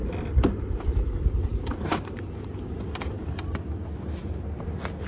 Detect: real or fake fake